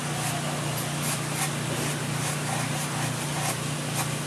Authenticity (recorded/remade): recorded